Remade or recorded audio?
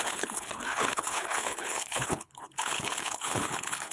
remade